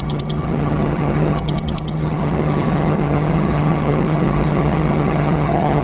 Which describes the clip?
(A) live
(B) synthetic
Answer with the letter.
B